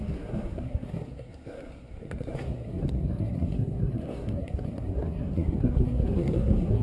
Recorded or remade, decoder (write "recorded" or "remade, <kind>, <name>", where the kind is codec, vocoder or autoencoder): remade, codec, SNAC